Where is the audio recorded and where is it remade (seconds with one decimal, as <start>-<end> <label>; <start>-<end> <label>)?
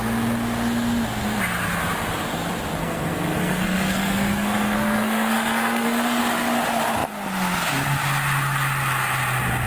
0.0-2.8 recorded; 2.8-6.2 remade; 6.2-9.7 recorded